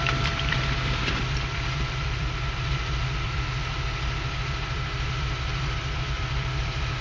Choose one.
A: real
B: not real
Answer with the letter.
B